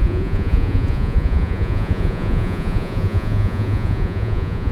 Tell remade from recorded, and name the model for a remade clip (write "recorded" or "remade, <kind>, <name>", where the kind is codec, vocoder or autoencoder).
remade, vocoder, Vocos